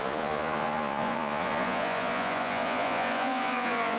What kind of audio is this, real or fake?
fake